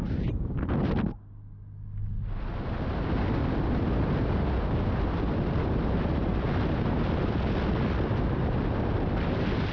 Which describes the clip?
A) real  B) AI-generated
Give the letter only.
A